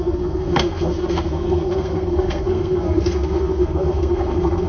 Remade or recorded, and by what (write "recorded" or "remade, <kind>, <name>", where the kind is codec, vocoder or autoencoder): remade, codec, SNAC